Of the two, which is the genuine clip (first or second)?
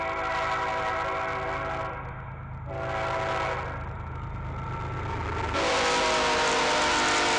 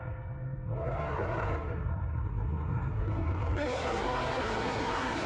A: first